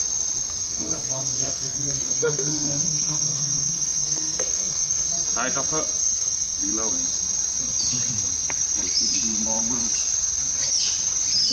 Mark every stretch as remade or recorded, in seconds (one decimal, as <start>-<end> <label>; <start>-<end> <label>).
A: 0.0-0.6 recorded; 0.6-5.1 remade; 5.1-6.0 recorded; 6.0-6.6 remade; 6.6-11.5 recorded